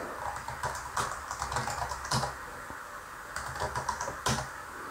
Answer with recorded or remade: recorded